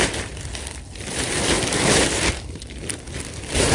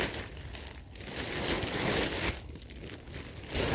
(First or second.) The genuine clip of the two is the second